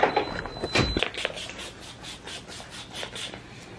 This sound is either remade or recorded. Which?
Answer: recorded